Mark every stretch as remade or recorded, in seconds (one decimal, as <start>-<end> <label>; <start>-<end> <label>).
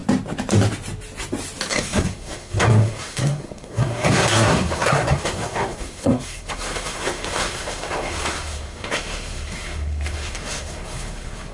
0.0-1.7 recorded; 1.7-11.5 remade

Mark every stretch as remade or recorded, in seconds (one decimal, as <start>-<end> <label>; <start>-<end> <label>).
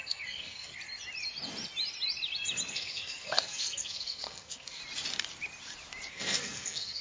0.0-0.7 remade; 0.7-2.7 recorded; 2.7-4.8 remade; 4.8-6.1 recorded; 6.1-7.0 remade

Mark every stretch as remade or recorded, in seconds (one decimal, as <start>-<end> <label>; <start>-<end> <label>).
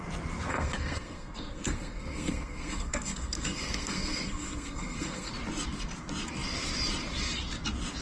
0.0-0.5 recorded; 0.5-5.3 remade; 5.3-8.0 recorded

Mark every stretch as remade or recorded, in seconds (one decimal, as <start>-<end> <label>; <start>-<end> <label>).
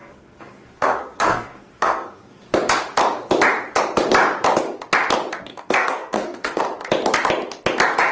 0.0-2.4 remade; 2.4-5.5 recorded; 5.5-6.6 remade; 6.6-8.1 recorded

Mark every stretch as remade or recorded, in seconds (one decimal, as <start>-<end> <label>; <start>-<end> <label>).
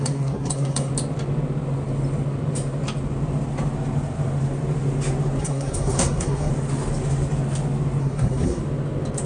0.0-0.9 remade; 0.9-5.4 recorded; 5.4-6.5 remade; 6.5-8.0 recorded; 8.0-8.6 remade; 8.6-9.3 recorded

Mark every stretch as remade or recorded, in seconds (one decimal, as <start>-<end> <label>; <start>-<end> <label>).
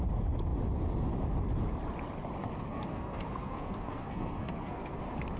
0.0-2.4 recorded; 2.4-5.0 remade; 5.0-5.4 recorded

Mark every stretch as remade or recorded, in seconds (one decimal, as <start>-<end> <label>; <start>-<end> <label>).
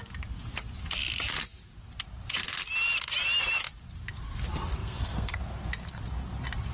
0.0-4.8 recorded; 4.8-5.4 remade; 5.4-6.7 recorded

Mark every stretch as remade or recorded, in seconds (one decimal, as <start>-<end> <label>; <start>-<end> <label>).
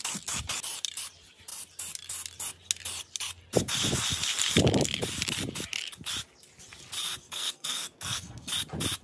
0.0-7.2 recorded; 7.2-8.5 remade; 8.5-9.0 recorded